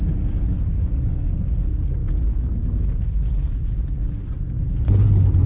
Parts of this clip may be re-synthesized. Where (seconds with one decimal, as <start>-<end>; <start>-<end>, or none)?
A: none